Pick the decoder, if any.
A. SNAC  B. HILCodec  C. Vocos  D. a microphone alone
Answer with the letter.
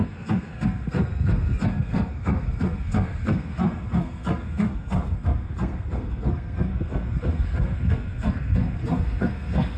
A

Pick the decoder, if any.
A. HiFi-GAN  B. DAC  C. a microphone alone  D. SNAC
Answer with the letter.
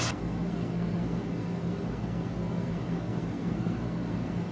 D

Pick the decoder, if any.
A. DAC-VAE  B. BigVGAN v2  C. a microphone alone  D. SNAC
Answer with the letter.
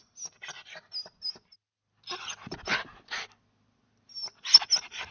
C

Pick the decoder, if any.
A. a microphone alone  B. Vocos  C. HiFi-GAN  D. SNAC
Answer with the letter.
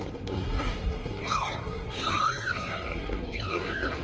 D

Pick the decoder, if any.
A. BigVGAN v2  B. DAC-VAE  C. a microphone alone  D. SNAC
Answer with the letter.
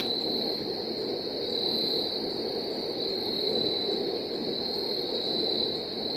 C